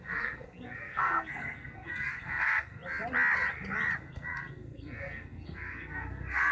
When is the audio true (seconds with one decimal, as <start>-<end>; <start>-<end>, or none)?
2.8-4.0